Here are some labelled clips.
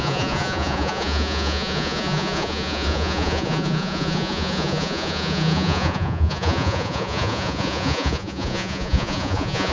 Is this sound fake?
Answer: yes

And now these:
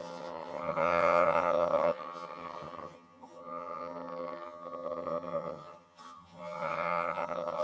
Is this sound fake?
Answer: yes